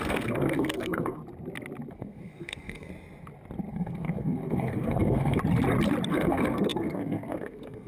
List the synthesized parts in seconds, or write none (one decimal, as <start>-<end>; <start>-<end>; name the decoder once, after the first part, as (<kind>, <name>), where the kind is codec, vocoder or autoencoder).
0.0-1.2 (codec, SNAC); 1.9-2.9; 3.7-5.4; 6.1-7.9